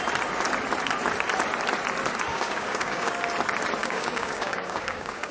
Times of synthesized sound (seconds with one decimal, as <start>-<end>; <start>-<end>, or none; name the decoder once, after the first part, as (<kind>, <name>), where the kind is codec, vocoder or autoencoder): 2.3-3.1 (codec, DAC); 3.8-5.3